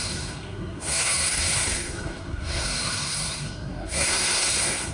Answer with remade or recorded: remade